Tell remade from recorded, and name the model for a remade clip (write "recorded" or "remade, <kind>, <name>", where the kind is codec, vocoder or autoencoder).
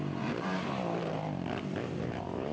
remade, vocoder, BigVGAN v2